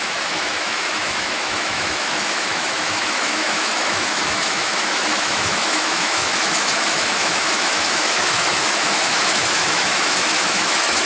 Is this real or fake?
fake